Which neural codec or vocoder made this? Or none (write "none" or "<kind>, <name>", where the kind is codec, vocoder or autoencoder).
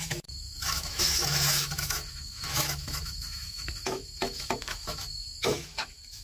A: autoencoder, DAC-VAE